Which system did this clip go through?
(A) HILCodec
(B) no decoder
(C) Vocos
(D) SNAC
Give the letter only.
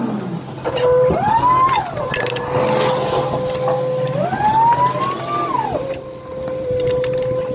B